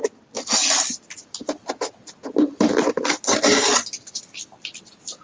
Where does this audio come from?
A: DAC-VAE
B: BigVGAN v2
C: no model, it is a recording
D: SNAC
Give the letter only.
C